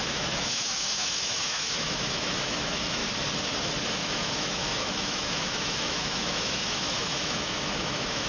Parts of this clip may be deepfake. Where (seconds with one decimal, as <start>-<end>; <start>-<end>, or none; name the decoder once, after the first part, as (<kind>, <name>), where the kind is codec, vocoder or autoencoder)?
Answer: 0.0-3.0 (autoencoder, DAC-VAE); 3.9-8.3